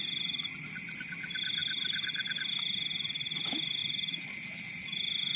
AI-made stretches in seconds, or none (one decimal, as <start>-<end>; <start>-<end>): none